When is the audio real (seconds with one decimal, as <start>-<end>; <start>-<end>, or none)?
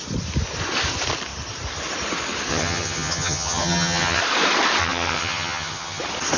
0.0-2.5; 4.2-4.8; 6.0-6.4